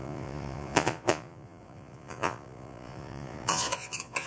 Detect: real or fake fake